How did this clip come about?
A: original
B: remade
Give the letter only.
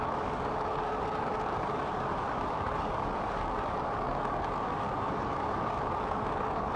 B